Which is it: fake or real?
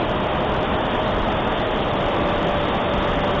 real